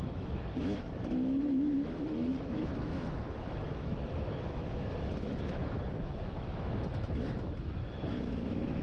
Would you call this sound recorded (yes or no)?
no